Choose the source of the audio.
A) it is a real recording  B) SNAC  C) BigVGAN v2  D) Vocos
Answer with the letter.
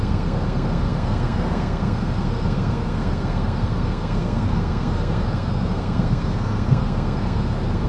B